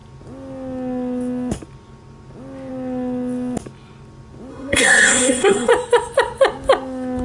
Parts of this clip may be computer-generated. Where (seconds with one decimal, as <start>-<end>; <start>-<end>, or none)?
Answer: 4.5-5.7